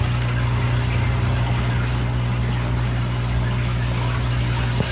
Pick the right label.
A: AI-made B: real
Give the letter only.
B